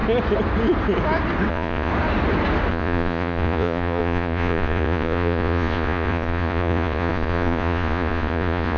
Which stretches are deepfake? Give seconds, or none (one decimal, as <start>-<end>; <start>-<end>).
1.5-1.9; 2.7-8.8

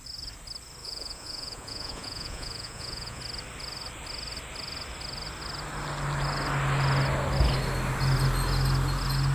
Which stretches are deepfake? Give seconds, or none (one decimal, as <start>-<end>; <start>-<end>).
0.8-3.2

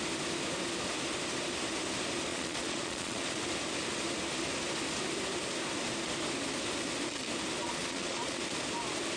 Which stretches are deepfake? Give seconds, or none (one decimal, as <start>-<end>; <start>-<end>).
2.3-3.4; 7.6-8.4